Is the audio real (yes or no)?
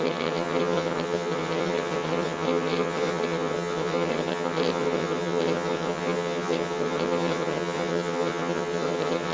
no